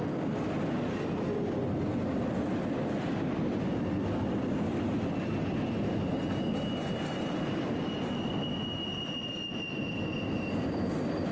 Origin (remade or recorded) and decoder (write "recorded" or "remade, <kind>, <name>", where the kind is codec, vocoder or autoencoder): recorded